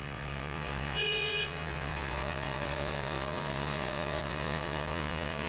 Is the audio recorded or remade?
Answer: remade